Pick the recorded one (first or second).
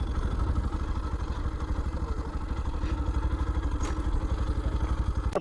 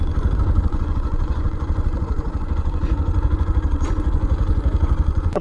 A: first